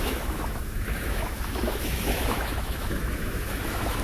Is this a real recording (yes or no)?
no